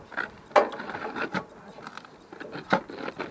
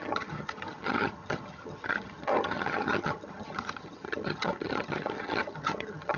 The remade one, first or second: second